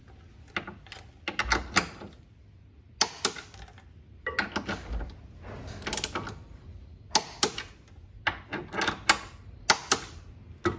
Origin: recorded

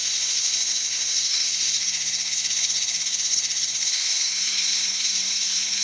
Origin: remade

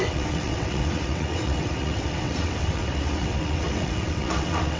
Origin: remade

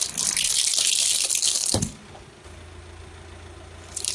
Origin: recorded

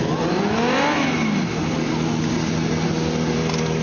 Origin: recorded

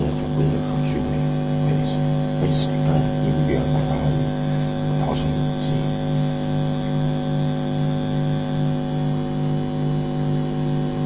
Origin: recorded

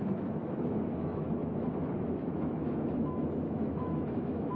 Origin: remade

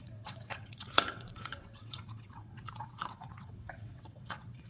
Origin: remade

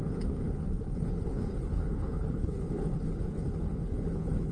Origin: remade